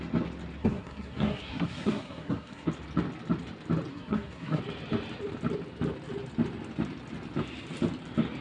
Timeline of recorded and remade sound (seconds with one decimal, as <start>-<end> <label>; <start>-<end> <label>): 0.0-0.6 recorded; 0.6-2.7 remade; 2.7-3.9 recorded; 3.9-4.6 remade; 4.6-8.4 recorded